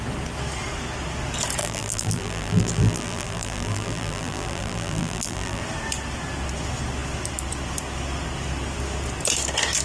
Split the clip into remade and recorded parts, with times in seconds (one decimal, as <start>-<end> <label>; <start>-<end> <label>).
0.0-1.6 recorded; 1.6-5.6 remade; 5.6-9.8 recorded